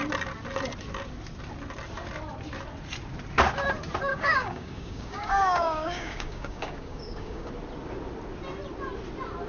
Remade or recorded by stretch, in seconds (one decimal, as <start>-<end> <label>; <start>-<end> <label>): 0.0-4.1 recorded; 4.1-7.5 remade; 7.5-9.5 recorded

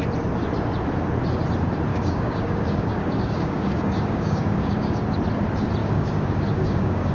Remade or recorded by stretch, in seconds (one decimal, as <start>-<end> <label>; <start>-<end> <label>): 0.0-1.9 recorded; 1.9-5.0 remade; 5.0-5.8 recorded; 5.8-7.1 remade